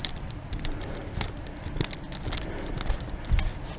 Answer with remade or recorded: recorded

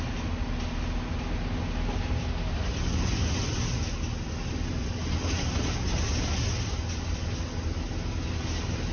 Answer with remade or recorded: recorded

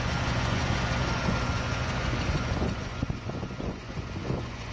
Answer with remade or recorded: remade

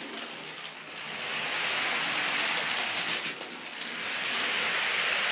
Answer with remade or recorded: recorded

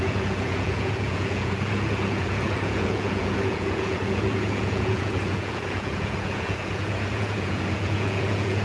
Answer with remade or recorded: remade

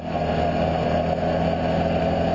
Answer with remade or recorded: recorded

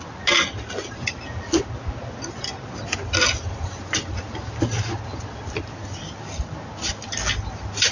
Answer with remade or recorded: recorded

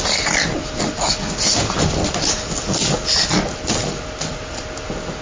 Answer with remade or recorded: recorded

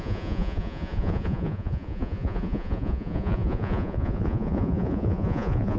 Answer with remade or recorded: remade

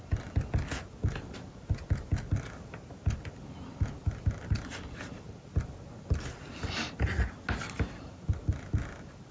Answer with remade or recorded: recorded